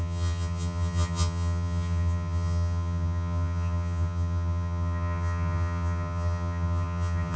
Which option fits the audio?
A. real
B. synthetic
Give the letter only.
B